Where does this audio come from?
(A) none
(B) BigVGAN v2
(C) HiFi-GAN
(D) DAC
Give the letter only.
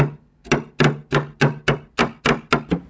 A